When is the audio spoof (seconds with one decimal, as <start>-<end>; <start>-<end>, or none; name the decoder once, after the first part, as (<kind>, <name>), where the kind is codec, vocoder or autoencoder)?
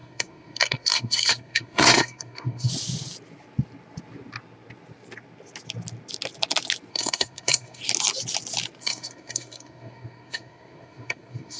0.0-2.7 (codec, SNAC); 6.9-7.8; 8.8-11.6